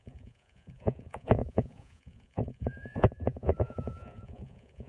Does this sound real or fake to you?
fake